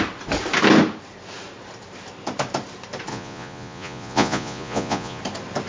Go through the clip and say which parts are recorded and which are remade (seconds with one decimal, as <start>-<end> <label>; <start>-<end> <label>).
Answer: 0.0-3.1 recorded; 3.1-5.2 remade; 5.2-5.7 recorded